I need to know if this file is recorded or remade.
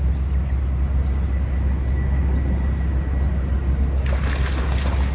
recorded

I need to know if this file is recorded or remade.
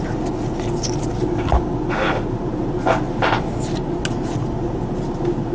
recorded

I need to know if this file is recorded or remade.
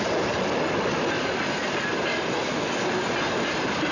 recorded